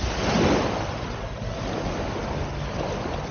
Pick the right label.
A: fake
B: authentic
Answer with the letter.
B